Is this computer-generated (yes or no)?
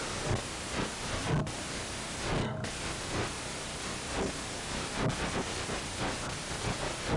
no